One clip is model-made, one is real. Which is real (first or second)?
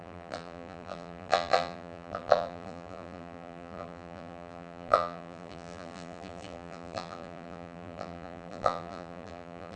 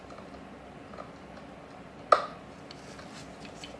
second